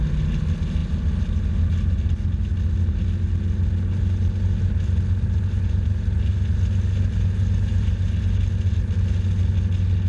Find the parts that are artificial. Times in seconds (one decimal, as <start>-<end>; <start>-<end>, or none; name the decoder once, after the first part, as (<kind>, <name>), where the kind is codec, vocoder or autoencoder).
none